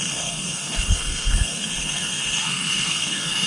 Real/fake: fake